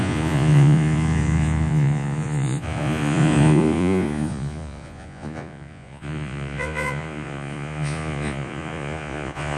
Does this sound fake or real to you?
fake